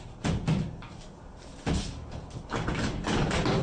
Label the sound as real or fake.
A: real